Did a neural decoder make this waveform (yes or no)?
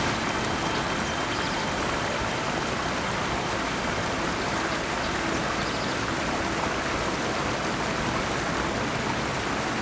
no